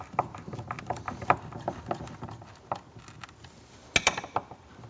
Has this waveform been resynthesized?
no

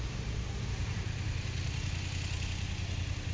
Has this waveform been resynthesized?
no